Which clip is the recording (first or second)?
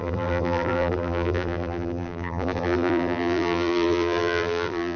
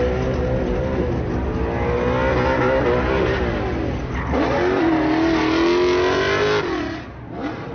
second